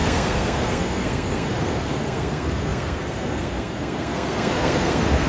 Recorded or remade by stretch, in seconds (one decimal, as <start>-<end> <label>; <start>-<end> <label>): 0.0-5.3 remade

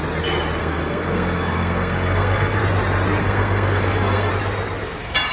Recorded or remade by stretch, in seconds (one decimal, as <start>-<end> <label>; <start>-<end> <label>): 0.0-0.6 recorded; 0.6-2.6 remade; 2.6-3.2 recorded; 3.2-4.3 remade; 4.3-5.3 recorded

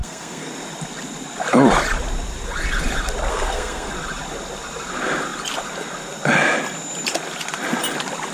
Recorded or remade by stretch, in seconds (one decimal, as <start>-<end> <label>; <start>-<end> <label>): 0.0-0.5 remade; 0.5-3.3 recorded; 3.3-3.9 remade; 3.9-8.3 recorded

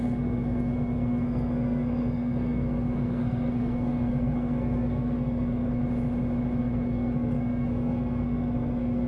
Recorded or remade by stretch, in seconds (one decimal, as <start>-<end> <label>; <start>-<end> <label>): 0.0-5.8 remade; 5.8-6.6 recorded; 6.6-9.1 remade

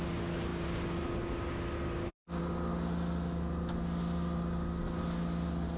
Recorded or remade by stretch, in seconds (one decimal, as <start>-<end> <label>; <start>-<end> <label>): 0.0-5.8 recorded

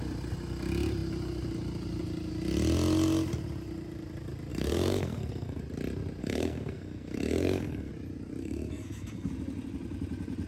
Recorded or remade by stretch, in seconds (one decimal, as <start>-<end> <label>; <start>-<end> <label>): 0.0-4.5 recorded; 4.5-5.6 remade; 5.6-6.2 recorded; 6.2-7.9 remade; 7.9-8.4 recorded; 8.4-9.3 remade; 9.3-10.5 recorded